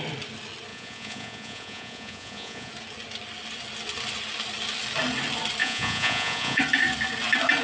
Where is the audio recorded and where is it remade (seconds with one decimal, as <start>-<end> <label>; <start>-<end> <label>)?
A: 0.0-0.7 recorded; 0.7-2.7 remade; 2.7-5.6 recorded; 5.6-6.6 remade; 6.6-7.6 recorded